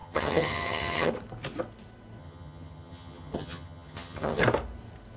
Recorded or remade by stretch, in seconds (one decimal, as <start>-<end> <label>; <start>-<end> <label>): 0.0-1.1 remade; 1.1-2.2 recorded; 2.2-4.4 remade; 4.4-5.2 recorded